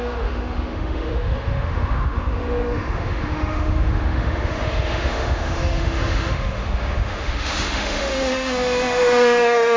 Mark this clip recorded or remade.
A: remade